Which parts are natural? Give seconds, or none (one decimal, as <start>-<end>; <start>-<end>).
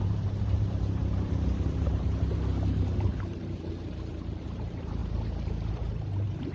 5.0-5.7